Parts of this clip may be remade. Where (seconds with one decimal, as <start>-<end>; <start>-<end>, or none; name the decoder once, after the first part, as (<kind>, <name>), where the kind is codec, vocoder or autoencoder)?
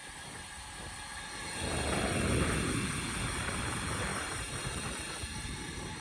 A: 4.1-4.7 (vocoder, BigVGAN v2); 5.3-6.0